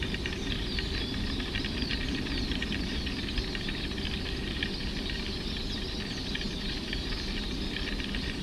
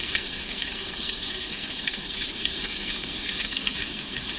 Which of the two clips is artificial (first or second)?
second